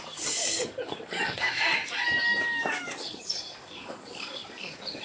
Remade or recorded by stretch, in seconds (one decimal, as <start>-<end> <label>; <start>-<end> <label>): 0.0-1.8 remade; 1.8-3.0 recorded; 3.0-5.0 remade

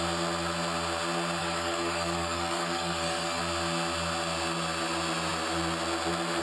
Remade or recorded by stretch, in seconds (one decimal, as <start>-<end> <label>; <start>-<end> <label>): 0.0-1.4 recorded; 1.4-3.4 remade; 3.4-6.4 recorded